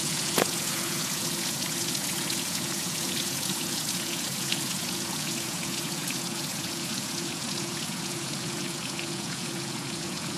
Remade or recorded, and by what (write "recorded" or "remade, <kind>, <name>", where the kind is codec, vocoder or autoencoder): remade, vocoder, Vocos